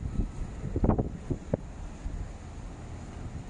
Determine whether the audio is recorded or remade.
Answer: recorded